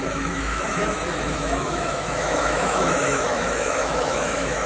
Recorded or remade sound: remade